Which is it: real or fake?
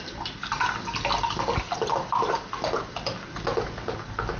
real